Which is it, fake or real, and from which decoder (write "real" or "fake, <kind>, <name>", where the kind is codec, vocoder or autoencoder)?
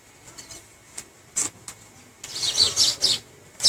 real